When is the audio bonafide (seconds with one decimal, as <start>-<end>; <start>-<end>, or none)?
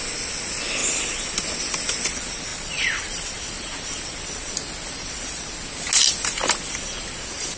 0.0-0.8; 1.6-7.6